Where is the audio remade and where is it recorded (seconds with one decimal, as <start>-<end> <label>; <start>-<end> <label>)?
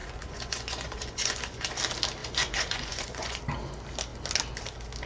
0.0-1.8 remade; 1.8-2.2 recorded; 2.2-3.4 remade; 3.4-5.1 recorded